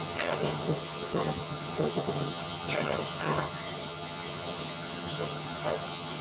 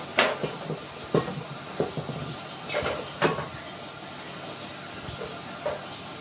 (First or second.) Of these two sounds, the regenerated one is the first